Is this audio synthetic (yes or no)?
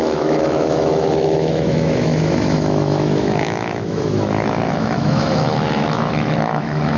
yes